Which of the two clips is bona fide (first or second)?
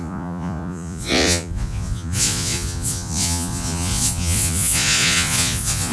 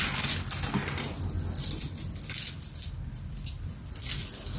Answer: second